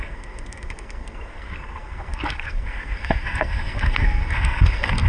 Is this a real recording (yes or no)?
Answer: no